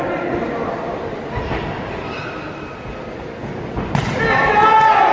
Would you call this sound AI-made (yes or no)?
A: no